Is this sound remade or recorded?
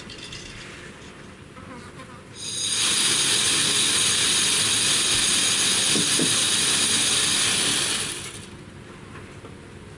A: recorded